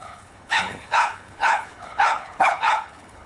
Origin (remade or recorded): remade